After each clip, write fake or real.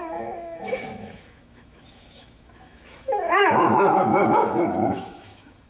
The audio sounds fake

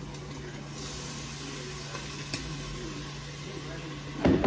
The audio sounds real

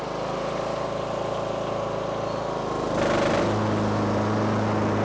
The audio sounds real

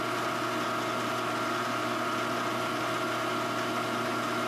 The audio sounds real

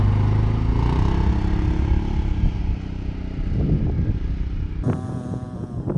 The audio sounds real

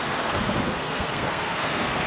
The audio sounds fake